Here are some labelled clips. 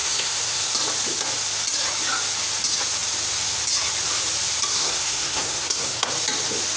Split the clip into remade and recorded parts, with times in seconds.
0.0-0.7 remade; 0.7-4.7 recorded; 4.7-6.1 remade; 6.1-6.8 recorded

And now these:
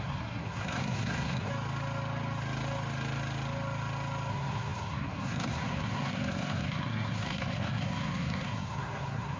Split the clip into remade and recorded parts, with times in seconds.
0.0-1.5 remade; 1.5-4.3 recorded; 4.3-9.4 remade